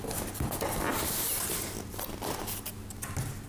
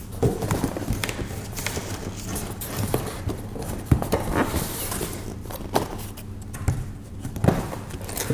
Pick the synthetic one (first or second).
second